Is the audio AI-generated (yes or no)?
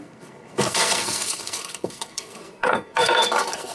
yes